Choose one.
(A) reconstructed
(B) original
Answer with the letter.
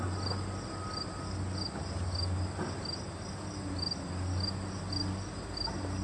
B